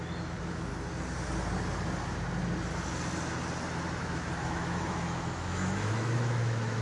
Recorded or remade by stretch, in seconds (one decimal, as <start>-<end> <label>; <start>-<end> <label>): 0.0-0.7 remade; 0.7-4.0 recorded; 4.0-6.8 remade